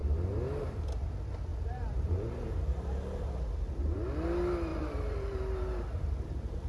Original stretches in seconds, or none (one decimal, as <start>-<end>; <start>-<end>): 0.0-1.5; 2.5-4.7; 5.4-6.7